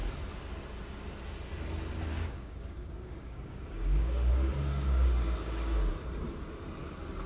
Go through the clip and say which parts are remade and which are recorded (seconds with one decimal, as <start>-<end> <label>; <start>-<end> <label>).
0.0-2.1 recorded; 2.1-5.9 remade; 5.9-7.3 recorded